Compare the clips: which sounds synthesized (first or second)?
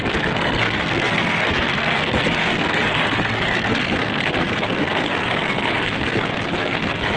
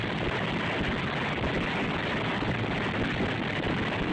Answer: first